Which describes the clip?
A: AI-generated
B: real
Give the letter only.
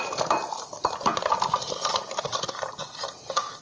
A